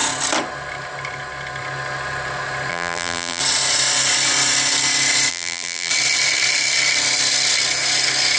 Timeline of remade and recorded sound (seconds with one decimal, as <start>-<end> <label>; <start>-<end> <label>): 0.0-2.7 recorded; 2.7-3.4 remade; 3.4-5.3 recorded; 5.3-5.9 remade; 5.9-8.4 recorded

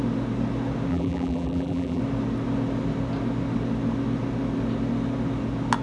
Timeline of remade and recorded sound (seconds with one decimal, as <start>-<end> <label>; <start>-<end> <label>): 0.0-0.9 recorded; 0.9-2.0 remade; 2.0-5.8 recorded

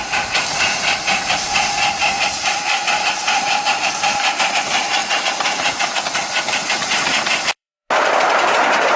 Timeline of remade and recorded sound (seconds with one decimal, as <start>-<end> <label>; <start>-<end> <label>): 0.0-9.0 remade

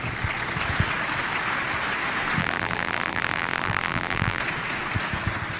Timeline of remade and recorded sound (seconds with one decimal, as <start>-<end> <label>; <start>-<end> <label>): 0.0-2.4 recorded; 2.4-4.4 remade; 4.4-5.6 recorded